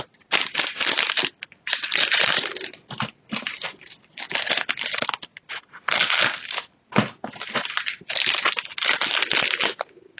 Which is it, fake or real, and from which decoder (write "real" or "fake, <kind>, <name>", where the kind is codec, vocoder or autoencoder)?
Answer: real